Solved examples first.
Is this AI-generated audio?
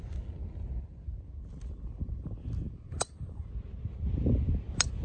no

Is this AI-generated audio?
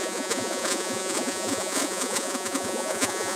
yes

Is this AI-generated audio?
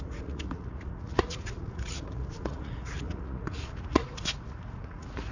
yes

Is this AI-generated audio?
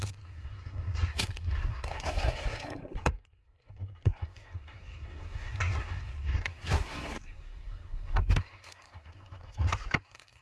yes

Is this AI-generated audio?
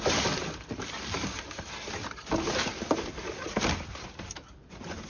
no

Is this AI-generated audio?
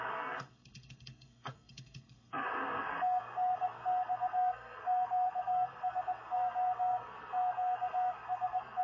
yes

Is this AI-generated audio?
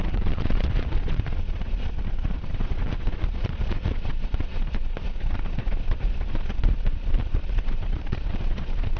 yes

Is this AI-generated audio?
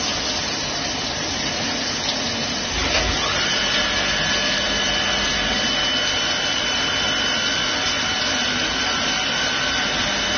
no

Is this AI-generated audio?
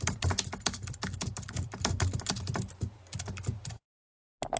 no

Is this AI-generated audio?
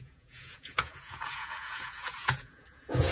yes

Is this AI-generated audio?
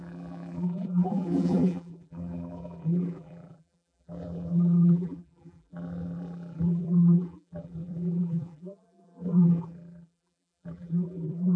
yes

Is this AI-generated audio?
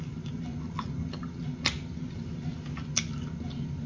no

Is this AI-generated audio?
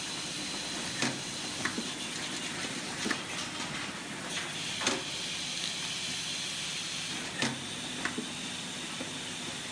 no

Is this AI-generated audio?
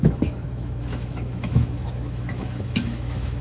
yes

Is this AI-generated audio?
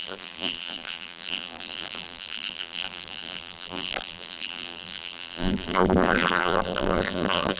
yes